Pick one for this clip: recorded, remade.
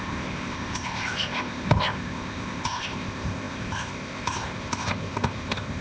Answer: remade